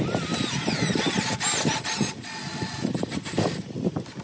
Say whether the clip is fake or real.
real